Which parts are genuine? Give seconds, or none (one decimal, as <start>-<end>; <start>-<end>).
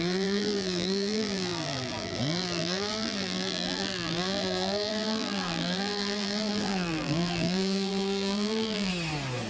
8.9-9.5